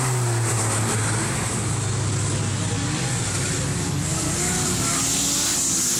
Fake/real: real